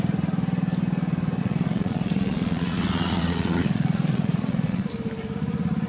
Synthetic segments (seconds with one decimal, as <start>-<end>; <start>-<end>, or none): 1.4-4.9